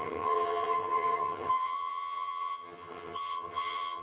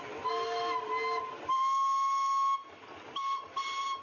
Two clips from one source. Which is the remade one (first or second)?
first